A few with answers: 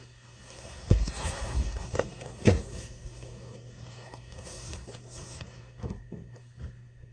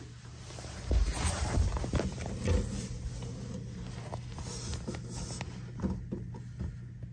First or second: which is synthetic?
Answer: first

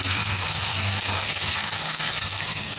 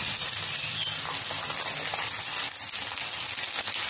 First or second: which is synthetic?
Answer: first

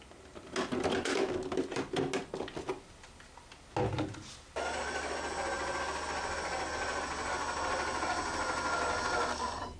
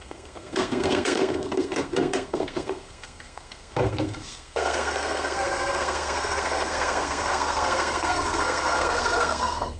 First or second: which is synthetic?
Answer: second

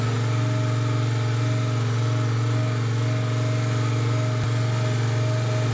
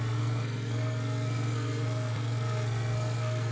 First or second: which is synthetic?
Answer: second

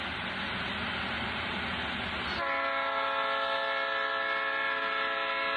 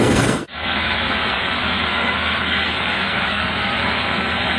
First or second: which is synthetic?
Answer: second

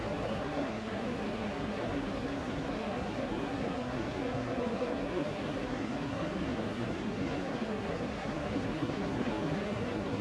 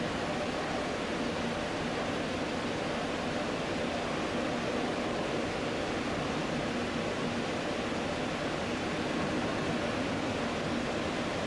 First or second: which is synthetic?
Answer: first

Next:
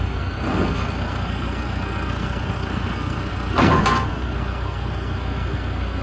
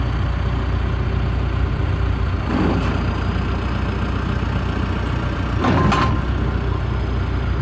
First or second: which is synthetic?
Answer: first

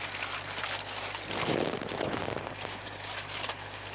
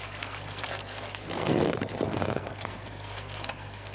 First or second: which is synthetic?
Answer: second